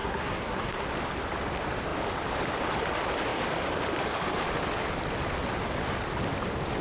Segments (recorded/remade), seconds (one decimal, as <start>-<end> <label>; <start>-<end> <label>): 0.0-0.9 remade; 0.9-6.8 recorded